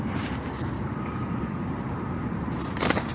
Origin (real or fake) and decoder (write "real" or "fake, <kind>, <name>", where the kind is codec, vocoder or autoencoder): fake, vocoder, BigVGAN v2